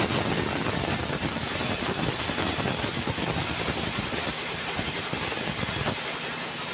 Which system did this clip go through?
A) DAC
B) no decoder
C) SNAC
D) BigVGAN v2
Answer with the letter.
B